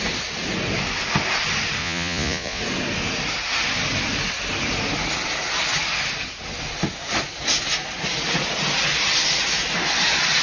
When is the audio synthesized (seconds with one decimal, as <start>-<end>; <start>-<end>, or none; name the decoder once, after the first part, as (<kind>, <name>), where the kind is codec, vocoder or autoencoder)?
1.8-2.6 (vocoder, Vocos)